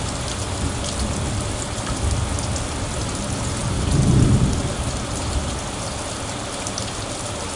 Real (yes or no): yes